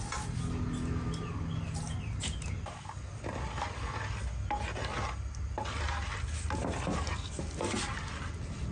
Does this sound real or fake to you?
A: real